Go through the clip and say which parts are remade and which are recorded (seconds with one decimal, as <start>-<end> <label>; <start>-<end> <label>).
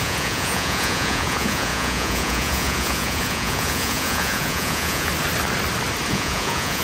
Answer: 0.0-5.1 remade; 5.1-6.1 recorded; 6.1-6.8 remade